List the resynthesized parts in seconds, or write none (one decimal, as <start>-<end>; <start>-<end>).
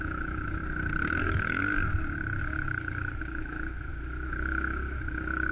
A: 0.0-0.6; 1.2-1.6; 2.4-5.5